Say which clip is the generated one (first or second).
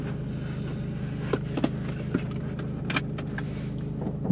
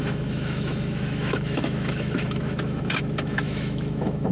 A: second